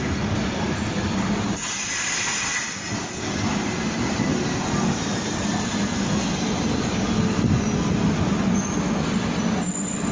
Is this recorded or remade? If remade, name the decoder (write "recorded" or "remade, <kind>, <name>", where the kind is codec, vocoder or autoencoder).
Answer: recorded